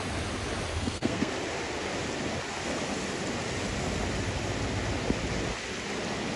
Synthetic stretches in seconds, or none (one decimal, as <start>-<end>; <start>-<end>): 0.7-1.3